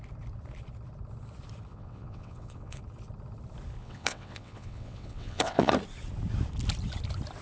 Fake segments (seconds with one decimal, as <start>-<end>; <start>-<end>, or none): 1.7-2.8; 3.8-5.7